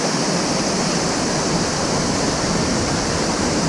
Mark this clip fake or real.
real